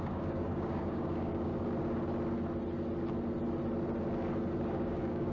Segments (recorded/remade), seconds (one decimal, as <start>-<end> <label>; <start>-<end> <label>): 0.0-1.5 remade; 1.5-4.7 recorded; 4.7-5.3 remade